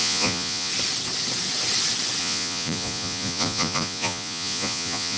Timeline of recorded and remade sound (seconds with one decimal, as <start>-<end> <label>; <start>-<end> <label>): 0.0-0.7 remade; 0.7-2.2 recorded; 2.2-5.2 remade